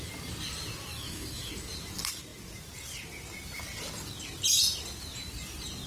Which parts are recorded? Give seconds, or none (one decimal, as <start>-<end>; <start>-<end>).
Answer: 0.0-0.9; 1.5-5.9